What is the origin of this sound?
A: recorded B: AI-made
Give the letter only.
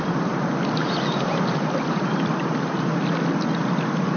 B